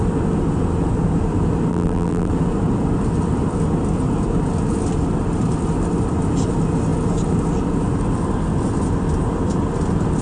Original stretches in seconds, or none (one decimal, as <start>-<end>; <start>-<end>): 0.0-1.7; 2.3-10.2